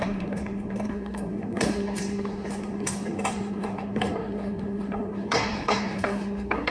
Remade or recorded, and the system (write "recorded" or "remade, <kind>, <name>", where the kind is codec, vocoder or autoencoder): remade, codec, SNAC